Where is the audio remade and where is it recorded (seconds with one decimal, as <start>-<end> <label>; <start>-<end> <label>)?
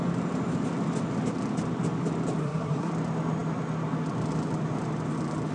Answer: 0.0-2.4 recorded; 2.4-2.9 remade; 2.9-5.5 recorded